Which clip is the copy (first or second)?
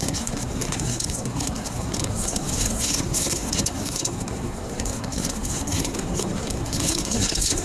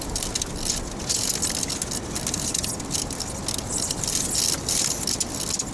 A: first